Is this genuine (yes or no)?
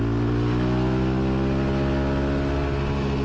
yes